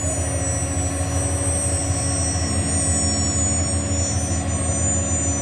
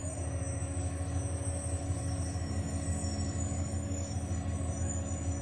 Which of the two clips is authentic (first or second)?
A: first